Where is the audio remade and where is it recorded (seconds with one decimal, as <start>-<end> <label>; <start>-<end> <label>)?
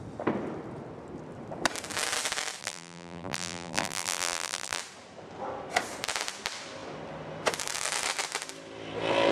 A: 0.0-2.6 recorded; 2.6-4.8 remade; 4.8-9.3 recorded